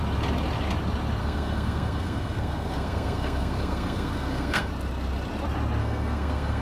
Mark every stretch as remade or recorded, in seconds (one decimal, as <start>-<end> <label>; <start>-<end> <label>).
0.0-1.2 recorded; 1.2-4.7 remade; 4.7-5.8 recorded; 5.8-6.6 remade